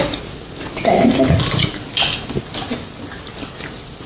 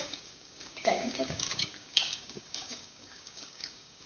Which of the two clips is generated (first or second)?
second